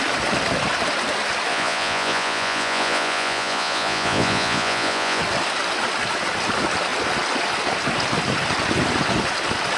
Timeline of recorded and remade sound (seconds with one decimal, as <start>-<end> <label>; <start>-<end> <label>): 0.0-1.5 recorded; 1.5-5.2 remade; 5.2-9.8 recorded